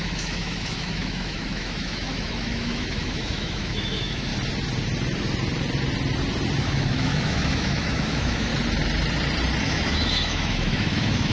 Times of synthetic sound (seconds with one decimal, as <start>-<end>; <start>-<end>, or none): 0.0-4.3; 6.6-8.5; 9.6-11.3